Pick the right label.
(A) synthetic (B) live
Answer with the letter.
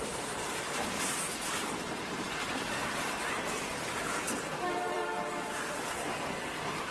A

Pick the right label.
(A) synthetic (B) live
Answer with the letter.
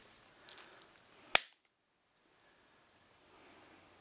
B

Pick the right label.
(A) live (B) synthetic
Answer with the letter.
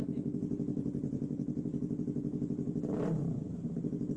B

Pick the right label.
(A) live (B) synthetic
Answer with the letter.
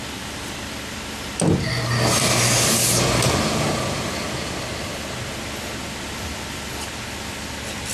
A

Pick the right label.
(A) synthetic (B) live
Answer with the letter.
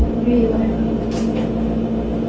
B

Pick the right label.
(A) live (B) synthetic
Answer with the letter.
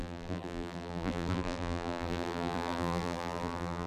B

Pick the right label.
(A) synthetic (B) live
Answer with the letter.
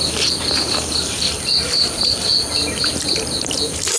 A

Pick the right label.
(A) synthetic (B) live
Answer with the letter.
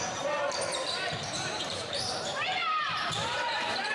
A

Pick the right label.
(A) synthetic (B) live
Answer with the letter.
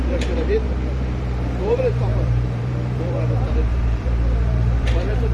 A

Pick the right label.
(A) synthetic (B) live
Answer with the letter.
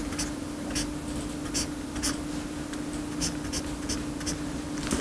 B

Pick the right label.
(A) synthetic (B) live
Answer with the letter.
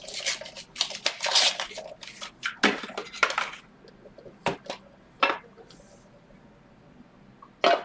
B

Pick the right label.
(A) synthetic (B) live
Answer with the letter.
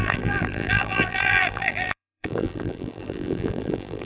A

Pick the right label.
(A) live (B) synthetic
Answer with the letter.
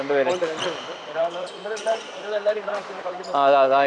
B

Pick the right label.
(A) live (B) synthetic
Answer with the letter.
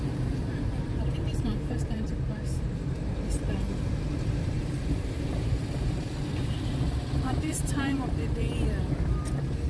B